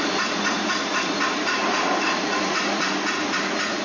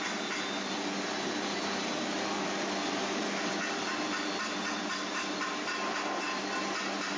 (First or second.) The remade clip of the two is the first